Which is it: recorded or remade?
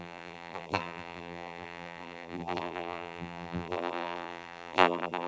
remade